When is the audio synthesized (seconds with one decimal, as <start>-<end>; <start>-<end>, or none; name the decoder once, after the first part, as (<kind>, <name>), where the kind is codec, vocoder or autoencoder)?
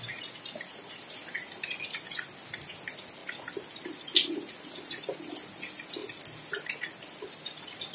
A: none